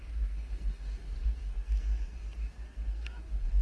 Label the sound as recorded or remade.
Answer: remade